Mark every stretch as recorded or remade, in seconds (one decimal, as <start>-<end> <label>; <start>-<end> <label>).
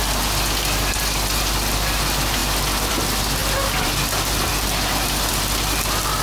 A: 0.0-6.2 recorded